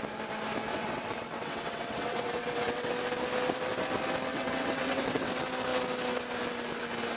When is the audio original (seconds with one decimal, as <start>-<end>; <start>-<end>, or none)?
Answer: 0.0-0.7; 2.9-4.3; 5.3-7.2